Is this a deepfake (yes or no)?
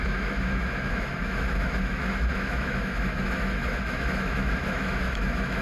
yes